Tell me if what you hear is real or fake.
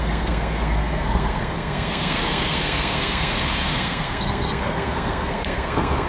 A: fake